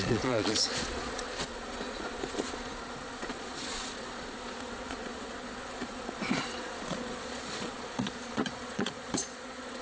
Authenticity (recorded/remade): remade